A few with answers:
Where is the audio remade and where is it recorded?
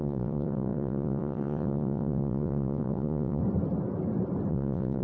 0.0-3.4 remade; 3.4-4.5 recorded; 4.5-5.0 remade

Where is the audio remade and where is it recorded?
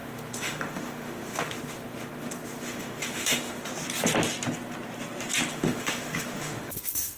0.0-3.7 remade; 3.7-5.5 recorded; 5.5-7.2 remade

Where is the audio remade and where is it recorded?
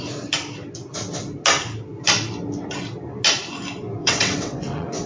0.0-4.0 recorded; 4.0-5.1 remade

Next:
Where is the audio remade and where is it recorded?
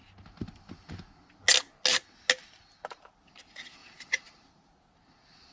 0.0-3.8 recorded; 3.8-4.7 remade; 4.7-5.5 recorded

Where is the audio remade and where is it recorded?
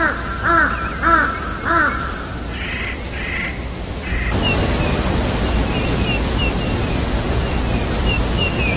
0.0-8.0 recorded; 8.0-8.8 remade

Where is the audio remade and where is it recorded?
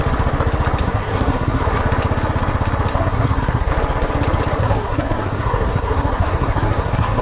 0.0-0.8 recorded; 0.8-1.8 remade; 1.8-2.9 recorded; 2.9-3.7 remade; 3.7-4.6 recorded; 4.6-7.2 remade